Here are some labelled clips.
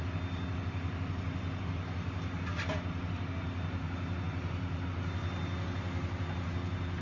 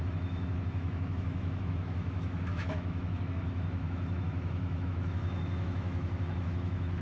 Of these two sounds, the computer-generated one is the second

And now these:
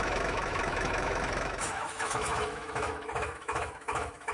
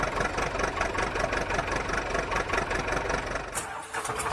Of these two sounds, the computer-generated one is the first